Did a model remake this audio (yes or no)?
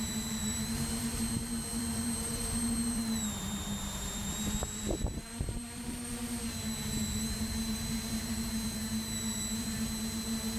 yes